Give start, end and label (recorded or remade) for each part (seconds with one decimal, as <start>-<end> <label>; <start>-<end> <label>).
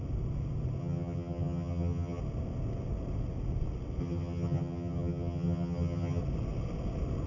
0.0-0.8 recorded; 0.8-2.2 remade; 2.2-4.0 recorded; 4.0-6.2 remade; 6.2-7.3 recorded